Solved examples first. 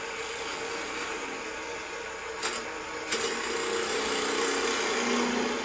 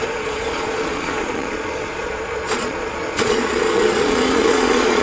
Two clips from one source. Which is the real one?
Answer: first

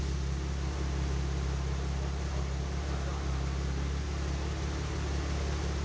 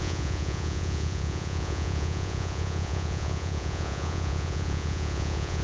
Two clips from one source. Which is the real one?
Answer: first